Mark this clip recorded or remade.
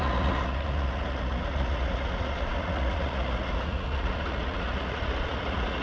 remade